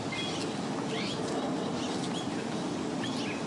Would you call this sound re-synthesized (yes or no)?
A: no